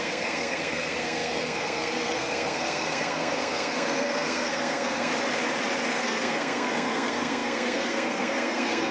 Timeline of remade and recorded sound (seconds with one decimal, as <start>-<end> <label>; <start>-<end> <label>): 0.0-5.1 remade; 5.1-5.9 recorded; 5.9-8.9 remade